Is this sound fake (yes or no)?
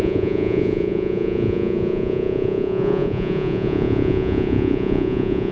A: yes